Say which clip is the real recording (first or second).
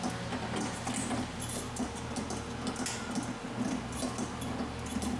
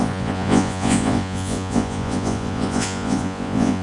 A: first